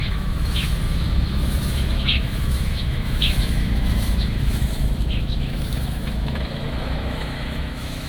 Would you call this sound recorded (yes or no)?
no